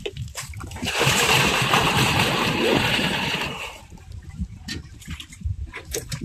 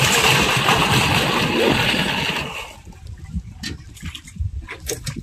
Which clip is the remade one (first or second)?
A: first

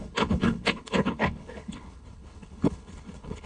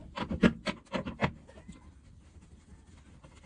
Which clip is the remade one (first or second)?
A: first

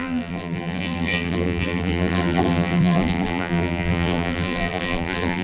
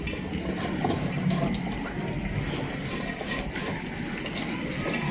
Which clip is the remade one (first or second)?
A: first